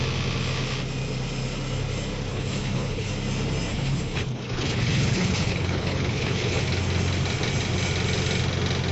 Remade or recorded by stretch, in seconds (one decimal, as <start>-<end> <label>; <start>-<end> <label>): 0.0-2.3 recorded; 2.3-3.1 remade; 3.1-3.7 recorded; 3.7-6.6 remade; 6.6-8.9 recorded